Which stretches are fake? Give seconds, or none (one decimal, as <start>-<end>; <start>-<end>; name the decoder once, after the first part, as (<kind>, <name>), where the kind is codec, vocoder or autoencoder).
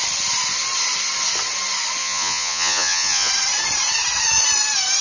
2.0-3.3 (vocoder, Vocos)